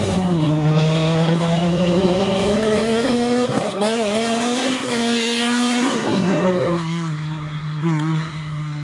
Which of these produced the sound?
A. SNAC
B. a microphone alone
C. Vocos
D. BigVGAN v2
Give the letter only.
A